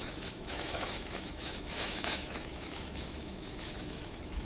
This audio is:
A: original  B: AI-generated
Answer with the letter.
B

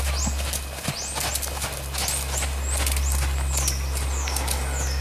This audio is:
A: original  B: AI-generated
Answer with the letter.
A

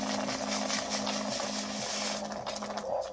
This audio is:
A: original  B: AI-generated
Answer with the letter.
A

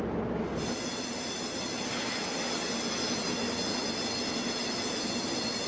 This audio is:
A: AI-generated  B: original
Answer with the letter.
B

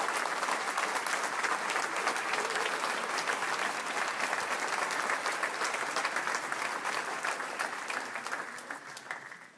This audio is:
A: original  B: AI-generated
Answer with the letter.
A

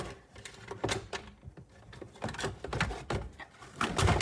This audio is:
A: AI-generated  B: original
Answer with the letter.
B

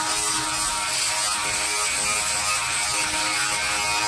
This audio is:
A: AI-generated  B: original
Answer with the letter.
B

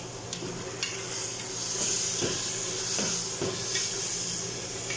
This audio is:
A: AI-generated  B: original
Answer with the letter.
B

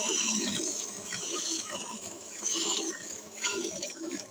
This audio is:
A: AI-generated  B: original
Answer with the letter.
A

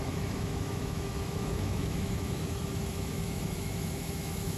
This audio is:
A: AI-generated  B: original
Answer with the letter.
A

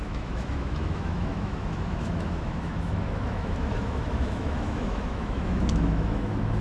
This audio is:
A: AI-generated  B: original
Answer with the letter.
A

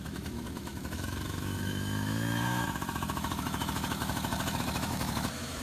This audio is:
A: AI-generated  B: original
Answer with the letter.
A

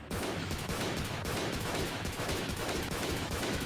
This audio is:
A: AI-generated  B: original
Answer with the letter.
A